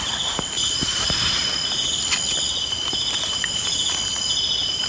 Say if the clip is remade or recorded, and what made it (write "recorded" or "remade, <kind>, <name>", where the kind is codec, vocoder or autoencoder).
recorded